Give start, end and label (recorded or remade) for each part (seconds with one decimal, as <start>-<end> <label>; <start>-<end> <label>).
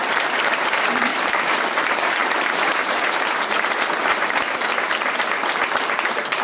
0.0-1.1 recorded; 1.1-1.6 remade; 1.6-2.2 recorded; 2.2-2.9 remade; 2.9-6.4 recorded